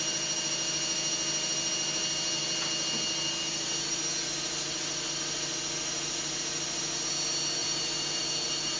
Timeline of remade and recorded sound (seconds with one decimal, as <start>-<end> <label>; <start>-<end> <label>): 0.0-7.6 recorded; 7.6-8.2 remade; 8.2-8.8 recorded